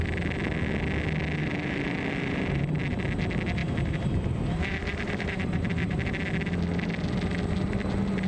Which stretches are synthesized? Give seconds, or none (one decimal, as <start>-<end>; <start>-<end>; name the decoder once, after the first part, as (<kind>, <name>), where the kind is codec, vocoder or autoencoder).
1.4-2.6 (vocoder, BigVGAN v2); 3.6-6.2

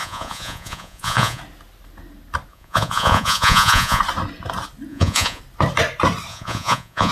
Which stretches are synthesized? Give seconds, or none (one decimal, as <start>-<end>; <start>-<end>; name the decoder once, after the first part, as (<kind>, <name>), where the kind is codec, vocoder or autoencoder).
0.0-1.4 (vocoder, Vocos); 2.5-4.0; 4.9-5.4; 6.3-7.1

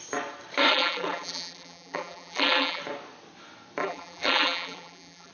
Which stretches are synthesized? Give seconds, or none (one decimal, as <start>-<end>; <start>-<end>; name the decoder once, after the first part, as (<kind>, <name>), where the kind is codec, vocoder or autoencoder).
0.7-2.8 (vocoder, BigVGAN v2); 3.8-5.3